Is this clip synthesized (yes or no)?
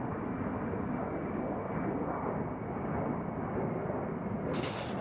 no